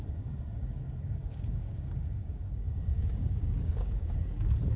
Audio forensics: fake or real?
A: fake